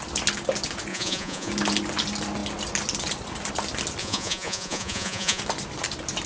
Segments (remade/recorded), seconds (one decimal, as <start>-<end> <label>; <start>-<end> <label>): 0.0-0.9 recorded; 0.9-1.5 remade; 1.5-4.0 recorded; 4.0-5.4 remade; 5.4-6.3 recorded